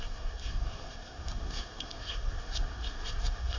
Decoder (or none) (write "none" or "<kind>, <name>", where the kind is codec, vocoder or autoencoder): codec, SNAC